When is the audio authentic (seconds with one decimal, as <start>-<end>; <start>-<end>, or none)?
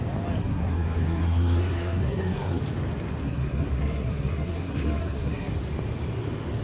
0.0-0.4; 2.6-3.2; 5.5-6.6